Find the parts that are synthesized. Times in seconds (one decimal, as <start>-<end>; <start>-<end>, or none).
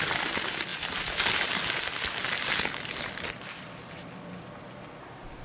none